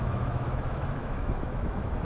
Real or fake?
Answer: fake